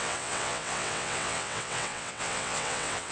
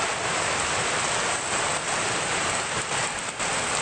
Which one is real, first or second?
second